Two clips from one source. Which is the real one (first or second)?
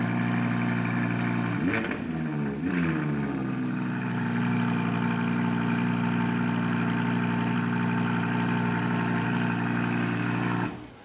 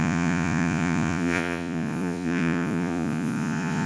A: first